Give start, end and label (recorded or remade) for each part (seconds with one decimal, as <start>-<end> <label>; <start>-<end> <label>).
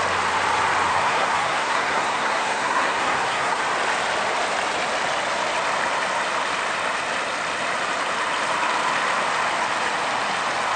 0.0-0.9 recorded; 0.9-3.6 remade; 3.6-10.8 recorded